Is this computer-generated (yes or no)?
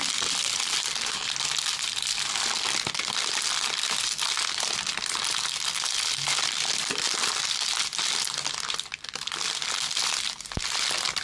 yes